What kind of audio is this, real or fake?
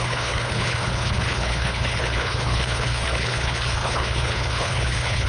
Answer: fake